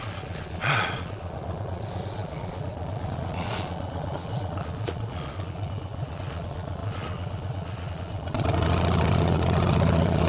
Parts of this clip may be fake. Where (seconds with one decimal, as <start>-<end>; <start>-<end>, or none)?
0.0-10.3